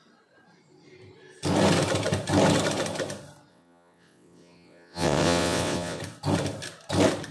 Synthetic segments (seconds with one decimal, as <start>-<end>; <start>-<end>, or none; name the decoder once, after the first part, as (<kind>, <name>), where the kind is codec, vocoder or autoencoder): 3.5-6.0 (vocoder, WaveNeXt)